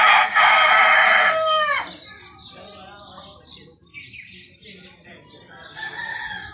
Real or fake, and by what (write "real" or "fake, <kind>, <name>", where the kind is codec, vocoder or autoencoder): real